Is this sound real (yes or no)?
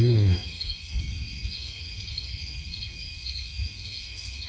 no